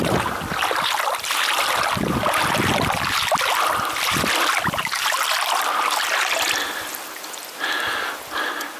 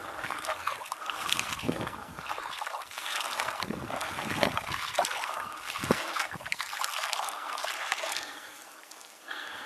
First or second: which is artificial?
second